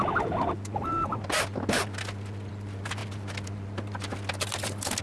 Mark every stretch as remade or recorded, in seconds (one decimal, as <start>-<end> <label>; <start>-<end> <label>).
0.0-5.0 recorded